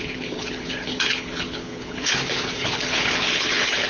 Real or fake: fake